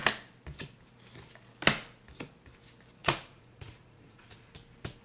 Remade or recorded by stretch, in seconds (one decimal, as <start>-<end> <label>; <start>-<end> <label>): 0.0-3.0 recorded; 3.0-4.5 remade; 4.5-5.0 recorded